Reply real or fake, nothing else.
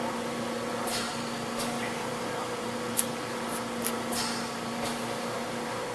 real